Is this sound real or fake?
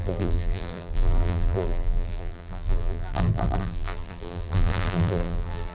fake